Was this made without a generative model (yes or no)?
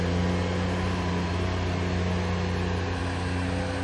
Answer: yes